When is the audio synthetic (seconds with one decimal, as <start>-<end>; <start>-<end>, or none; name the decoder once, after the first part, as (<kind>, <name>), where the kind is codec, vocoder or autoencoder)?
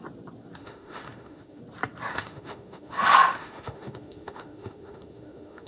0.6-1.6 (autoencoder, DAC-VAE); 2.1-5.7